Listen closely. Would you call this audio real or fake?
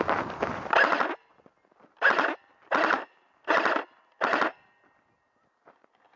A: real